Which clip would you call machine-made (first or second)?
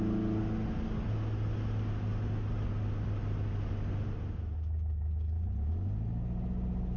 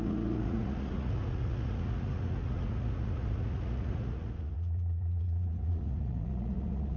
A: second